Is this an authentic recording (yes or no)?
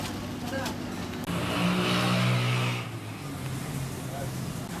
yes